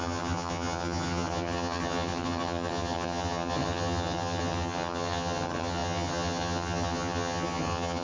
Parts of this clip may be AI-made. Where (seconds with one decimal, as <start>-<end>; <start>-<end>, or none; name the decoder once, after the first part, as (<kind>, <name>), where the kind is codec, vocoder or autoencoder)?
0.0-8.0 (vocoder, HiFi-GAN)